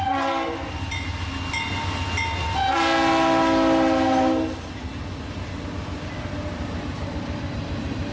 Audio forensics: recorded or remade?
recorded